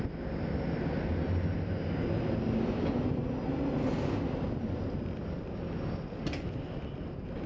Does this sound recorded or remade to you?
recorded